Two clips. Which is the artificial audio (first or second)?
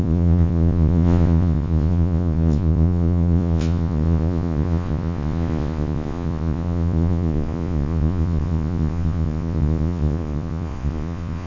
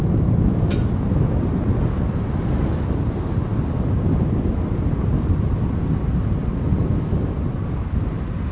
first